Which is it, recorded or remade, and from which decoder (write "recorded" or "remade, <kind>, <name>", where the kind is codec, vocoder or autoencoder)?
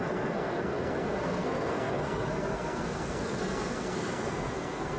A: remade, codec, SNAC